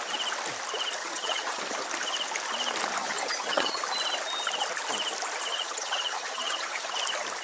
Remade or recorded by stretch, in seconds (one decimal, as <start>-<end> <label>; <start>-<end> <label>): 0.0-1.0 recorded; 1.0-1.6 remade; 1.6-3.0 recorded; 3.0-3.8 remade; 3.8-5.5 recorded; 5.5-6.9 remade; 6.9-7.4 recorded